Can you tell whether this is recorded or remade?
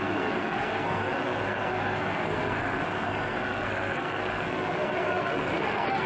remade